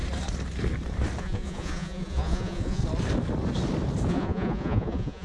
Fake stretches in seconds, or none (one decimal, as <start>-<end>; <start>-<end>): 1.2-2.8; 4.1-5.2